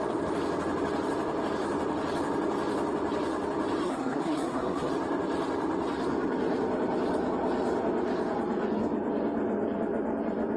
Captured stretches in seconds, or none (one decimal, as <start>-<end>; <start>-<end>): 0.0-3.8; 4.9-10.6